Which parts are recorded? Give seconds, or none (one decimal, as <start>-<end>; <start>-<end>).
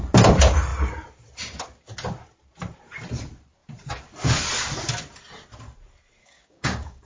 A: 0.0-6.2